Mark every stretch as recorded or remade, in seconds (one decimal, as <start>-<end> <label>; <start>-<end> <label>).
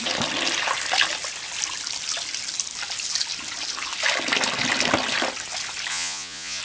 0.0-5.9 recorded; 5.9-6.6 remade